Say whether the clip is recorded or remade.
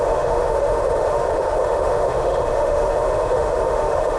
remade